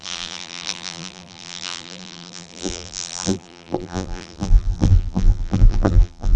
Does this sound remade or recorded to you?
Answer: remade